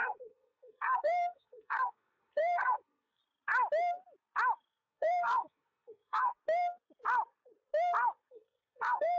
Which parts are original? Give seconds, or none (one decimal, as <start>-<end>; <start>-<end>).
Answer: 3.2-4.7; 6.4-8.3